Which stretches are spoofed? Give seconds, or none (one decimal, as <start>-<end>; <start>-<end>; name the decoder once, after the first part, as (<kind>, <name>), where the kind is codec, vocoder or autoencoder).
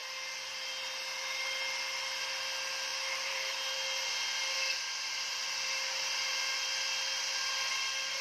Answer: 0.5-6.3 (vocoder, BigVGAN v2); 7.5-8.2